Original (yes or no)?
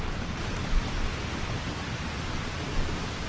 yes